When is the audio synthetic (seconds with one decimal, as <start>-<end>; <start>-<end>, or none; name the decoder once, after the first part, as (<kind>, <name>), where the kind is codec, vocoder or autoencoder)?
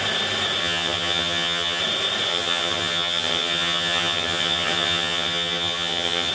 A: 0.6-1.8 (vocoder, HiFi-GAN); 2.3-6.3